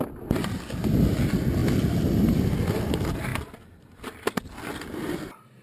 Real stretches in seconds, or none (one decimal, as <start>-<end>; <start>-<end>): 0.0-5.6